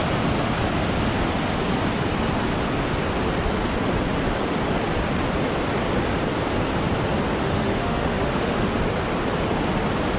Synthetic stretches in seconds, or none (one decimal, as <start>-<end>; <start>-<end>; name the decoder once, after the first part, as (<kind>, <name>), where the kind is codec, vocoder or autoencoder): 7.4-8.8 (autoencoder, DAC-VAE)